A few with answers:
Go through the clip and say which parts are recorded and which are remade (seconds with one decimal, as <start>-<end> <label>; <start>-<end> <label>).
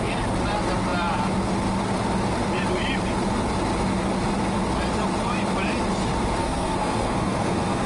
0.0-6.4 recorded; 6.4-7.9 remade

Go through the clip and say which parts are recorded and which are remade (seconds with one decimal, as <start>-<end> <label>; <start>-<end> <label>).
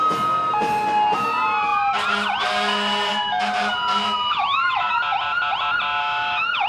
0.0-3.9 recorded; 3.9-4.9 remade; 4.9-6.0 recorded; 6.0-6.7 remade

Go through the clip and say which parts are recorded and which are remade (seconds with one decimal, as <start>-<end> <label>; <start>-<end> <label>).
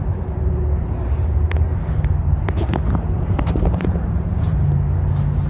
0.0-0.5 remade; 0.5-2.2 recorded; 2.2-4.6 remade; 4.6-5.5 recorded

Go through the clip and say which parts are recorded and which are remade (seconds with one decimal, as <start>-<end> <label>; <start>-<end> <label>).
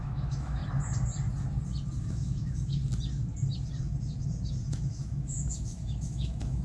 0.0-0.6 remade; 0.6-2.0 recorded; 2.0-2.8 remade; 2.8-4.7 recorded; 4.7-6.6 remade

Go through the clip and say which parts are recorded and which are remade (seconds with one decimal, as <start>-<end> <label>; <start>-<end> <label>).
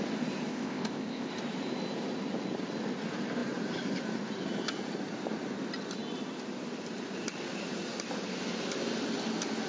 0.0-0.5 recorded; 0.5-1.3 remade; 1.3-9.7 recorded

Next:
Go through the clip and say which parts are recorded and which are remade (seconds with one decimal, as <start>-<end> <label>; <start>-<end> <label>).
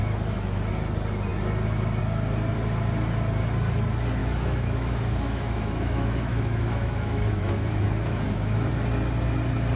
0.0-0.7 remade; 0.7-4.2 recorded; 4.2-8.7 remade; 8.7-9.8 recorded